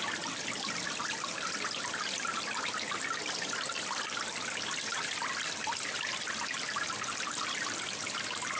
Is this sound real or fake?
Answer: fake